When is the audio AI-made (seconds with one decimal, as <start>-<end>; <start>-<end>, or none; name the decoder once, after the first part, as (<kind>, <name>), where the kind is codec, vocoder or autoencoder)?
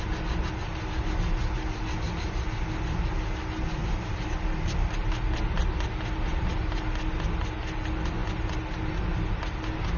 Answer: 3.8-4.4 (vocoder, BigVGAN v2)